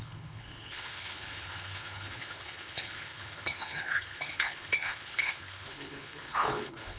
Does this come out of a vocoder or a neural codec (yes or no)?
yes